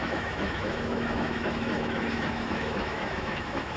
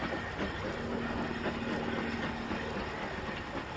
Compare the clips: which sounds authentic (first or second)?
second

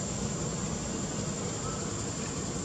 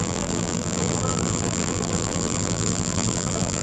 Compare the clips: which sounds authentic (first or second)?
first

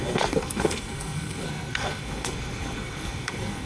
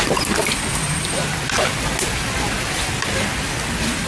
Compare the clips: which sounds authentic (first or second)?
second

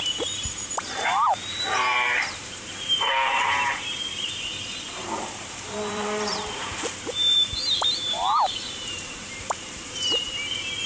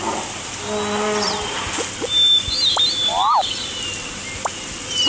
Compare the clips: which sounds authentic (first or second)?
second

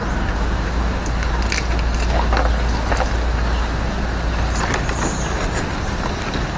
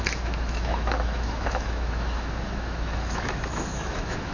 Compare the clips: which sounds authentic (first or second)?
first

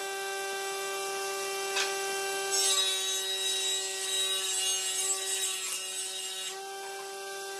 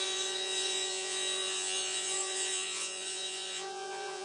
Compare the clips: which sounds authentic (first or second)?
first